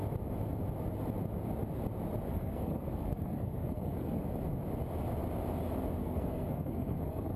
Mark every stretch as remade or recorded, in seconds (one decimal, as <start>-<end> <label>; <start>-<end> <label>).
0.0-2.3 recorded; 2.3-4.2 remade; 4.2-6.0 recorded; 6.0-7.4 remade